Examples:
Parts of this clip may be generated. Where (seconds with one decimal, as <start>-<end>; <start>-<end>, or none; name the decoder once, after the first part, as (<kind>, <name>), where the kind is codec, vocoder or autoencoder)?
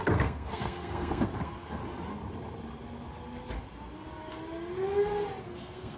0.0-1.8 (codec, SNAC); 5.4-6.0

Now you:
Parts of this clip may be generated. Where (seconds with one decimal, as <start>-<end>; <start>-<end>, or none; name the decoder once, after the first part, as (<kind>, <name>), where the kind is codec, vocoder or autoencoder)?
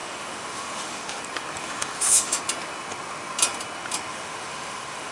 0.0-1.2 (autoencoder, DAC-VAE); 1.6-2.4; 4.1-5.1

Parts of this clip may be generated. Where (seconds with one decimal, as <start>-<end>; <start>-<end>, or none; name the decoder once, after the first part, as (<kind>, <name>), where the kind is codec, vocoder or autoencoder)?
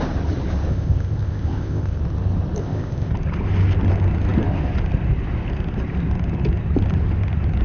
0.7-2.0 (codec, ZipCodec); 2.6-3.1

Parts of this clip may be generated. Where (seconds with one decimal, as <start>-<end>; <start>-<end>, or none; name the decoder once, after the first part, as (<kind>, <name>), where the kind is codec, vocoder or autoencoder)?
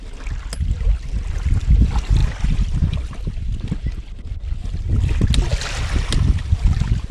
2.2-4.1 (vocoder, BigVGAN v2)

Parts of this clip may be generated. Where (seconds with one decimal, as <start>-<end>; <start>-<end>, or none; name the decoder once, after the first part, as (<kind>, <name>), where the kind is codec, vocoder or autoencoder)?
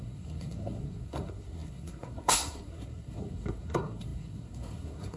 0.0-5.2 (codec, SNAC)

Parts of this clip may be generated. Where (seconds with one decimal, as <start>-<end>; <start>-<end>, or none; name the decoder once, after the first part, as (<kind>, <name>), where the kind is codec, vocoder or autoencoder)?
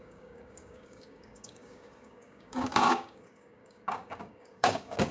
0.0-5.1 (codec, DAC)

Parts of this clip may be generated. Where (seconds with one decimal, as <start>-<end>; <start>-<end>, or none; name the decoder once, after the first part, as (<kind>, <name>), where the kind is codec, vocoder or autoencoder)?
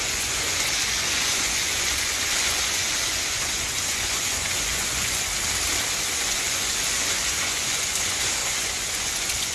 0.0-5.3 (vocoder, Vocos); 6.1-9.5